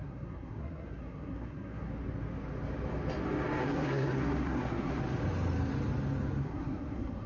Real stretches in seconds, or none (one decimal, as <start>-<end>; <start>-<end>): 1.9-3.6; 5.0-6.4